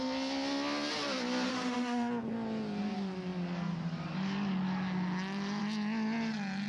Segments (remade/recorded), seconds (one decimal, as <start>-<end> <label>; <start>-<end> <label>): 0.0-1.5 recorded; 1.5-2.1 remade; 2.1-6.7 recorded